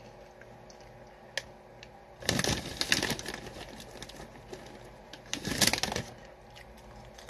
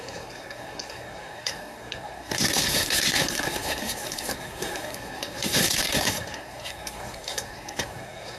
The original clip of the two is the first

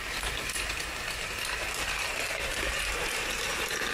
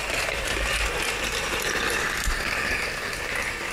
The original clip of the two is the second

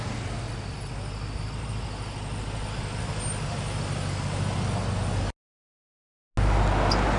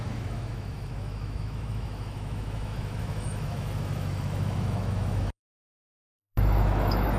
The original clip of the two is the first